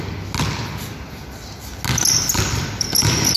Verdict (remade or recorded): recorded